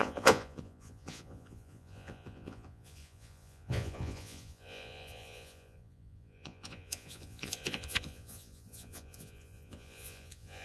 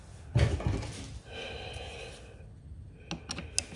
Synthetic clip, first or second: first